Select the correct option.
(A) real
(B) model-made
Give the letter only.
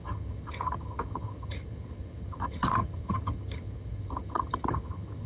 B